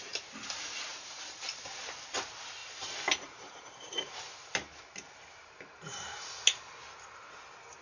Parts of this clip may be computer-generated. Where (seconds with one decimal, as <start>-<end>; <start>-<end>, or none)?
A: 0.9-1.8; 2.6-6.6